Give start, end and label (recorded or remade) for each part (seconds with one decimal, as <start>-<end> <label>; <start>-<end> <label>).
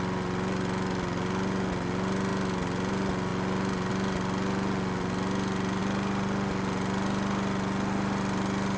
0.0-8.8 recorded